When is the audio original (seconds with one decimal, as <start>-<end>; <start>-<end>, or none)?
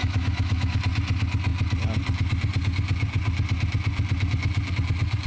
0.8-5.3